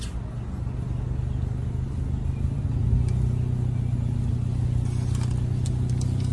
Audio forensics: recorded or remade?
recorded